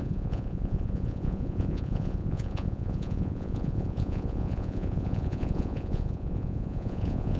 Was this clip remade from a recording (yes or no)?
yes